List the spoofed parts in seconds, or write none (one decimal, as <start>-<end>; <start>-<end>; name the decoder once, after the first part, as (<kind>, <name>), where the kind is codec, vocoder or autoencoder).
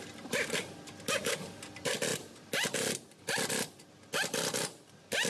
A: none